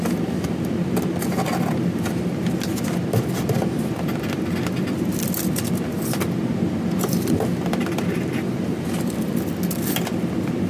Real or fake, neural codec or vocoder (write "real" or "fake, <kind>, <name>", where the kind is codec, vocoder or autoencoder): real